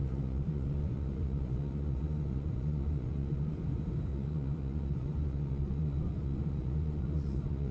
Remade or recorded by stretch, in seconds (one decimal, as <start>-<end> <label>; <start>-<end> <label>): 0.0-3.6 remade; 3.6-4.1 recorded; 4.1-7.7 remade